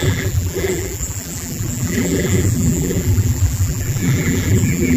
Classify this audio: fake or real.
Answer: fake